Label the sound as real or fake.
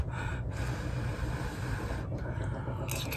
real